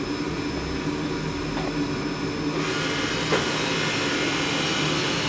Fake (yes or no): no